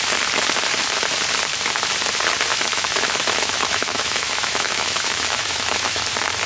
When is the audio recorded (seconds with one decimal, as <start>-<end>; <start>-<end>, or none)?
0.0-2.5; 6.0-6.5